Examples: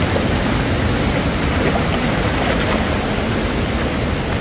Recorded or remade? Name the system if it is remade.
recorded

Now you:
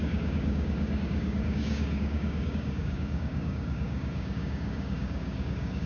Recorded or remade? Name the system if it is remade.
remade, codec, DAC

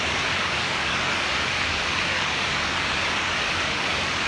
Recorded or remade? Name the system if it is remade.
remade, codec, DAC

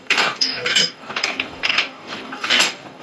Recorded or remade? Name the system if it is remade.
remade, codec, DAC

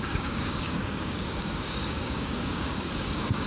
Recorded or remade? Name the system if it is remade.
remade, codec, DAC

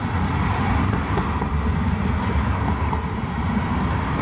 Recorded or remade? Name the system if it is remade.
recorded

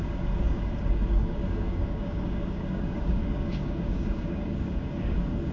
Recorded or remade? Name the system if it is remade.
remade, codec, DAC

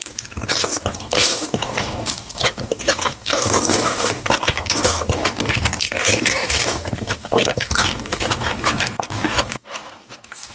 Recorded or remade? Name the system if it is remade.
remade, codec, DAC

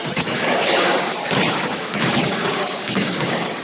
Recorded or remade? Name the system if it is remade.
remade, codec, DAC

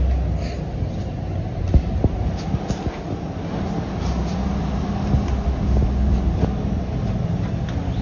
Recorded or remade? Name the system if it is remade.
recorded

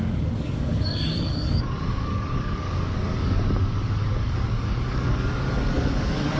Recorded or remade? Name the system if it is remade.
remade, codec, DAC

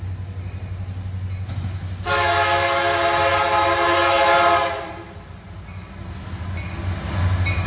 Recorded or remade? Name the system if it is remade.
recorded